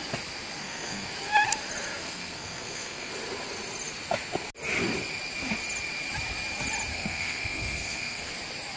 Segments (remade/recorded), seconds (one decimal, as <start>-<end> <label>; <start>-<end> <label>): 0.0-0.6 recorded; 0.6-1.1 remade; 1.1-2.0 recorded; 2.0-3.1 remade; 3.1-6.9 recorded; 6.9-8.3 remade; 8.3-8.8 recorded